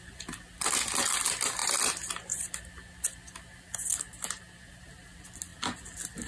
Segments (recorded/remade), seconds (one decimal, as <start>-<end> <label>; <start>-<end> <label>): 0.0-6.3 recorded